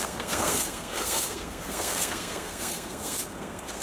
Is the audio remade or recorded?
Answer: remade